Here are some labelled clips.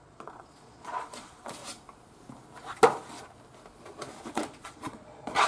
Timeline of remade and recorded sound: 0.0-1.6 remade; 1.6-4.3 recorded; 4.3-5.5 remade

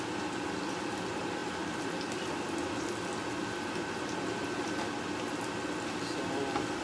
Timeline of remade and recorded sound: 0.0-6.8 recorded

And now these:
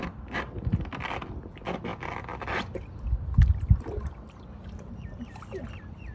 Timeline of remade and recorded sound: 0.0-6.1 recorded

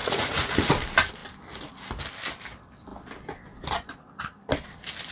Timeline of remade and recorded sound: 0.0-0.7 remade; 0.7-5.1 recorded

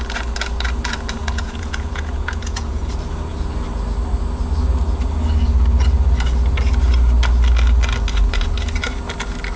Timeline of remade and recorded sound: 0.0-1.2 recorded; 1.2-2.9 remade; 2.9-9.6 recorded

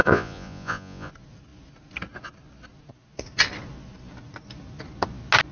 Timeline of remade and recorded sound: 0.0-1.1 remade; 1.1-5.5 recorded